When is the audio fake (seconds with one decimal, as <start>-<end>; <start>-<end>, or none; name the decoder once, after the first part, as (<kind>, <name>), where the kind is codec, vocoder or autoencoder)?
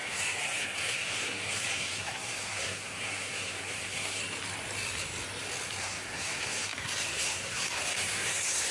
0.0-4.2 (codec, SNAC); 5.8-8.7